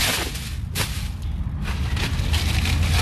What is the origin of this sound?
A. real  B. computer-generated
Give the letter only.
A